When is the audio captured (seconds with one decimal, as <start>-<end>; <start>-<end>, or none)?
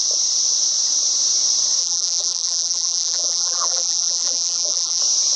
0.0-1.8; 5.0-5.4